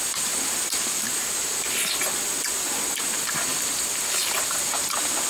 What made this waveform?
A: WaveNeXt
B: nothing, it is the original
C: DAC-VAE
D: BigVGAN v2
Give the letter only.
B